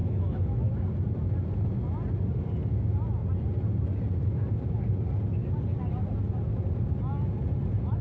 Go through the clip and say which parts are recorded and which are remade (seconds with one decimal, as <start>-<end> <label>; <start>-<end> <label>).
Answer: 0.0-0.7 remade; 0.7-8.0 recorded